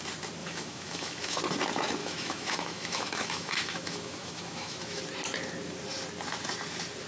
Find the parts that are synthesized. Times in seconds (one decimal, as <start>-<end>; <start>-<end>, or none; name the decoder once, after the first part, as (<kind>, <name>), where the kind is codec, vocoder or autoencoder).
0.4-1.4 (autoencoder, DAC-VAE); 2.0-5.0